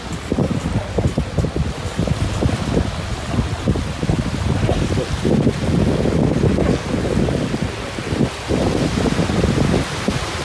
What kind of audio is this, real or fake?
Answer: real